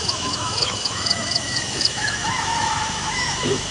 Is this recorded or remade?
remade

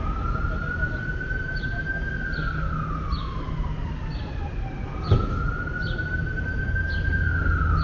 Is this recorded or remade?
recorded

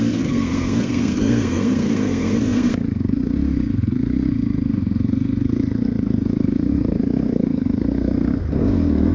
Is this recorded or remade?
remade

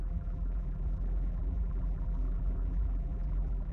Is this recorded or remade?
remade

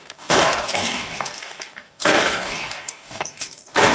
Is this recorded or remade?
remade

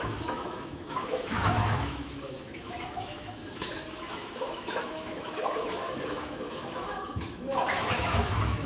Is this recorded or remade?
remade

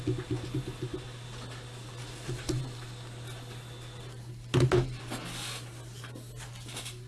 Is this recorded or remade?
recorded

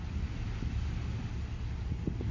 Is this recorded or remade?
recorded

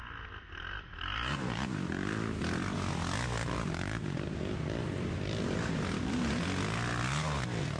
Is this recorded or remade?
recorded